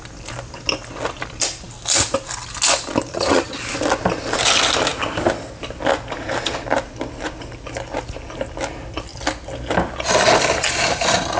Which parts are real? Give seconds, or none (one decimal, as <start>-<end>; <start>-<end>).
0.0-3.1; 3.6-11.4

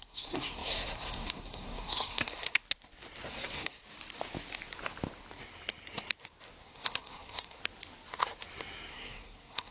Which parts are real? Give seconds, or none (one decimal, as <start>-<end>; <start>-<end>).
2.6-3.3; 3.8-6.6; 7.6-8.9

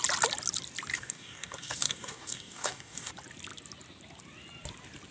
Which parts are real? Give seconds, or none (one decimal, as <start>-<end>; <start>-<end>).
0.0-0.9; 3.1-5.1

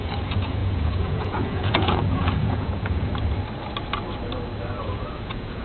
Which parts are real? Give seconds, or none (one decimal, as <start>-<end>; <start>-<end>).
3.1-4.8

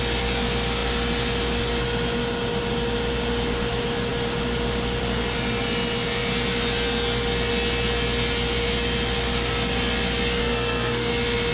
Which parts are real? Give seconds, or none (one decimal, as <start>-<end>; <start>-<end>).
0.0-10.4; 11.1-11.5

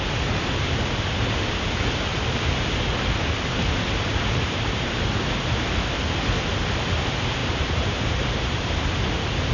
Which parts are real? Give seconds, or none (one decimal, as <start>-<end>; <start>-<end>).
0.0-4.1; 5.2-7.4; 9.1-9.5